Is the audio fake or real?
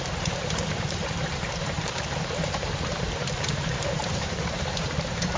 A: fake